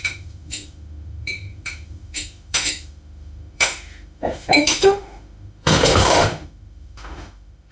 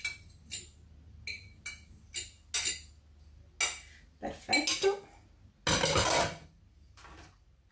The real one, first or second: second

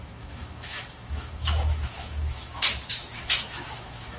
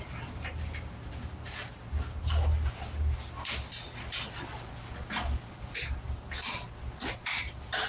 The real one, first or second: second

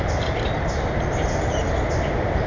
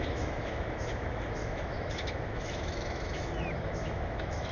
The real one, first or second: first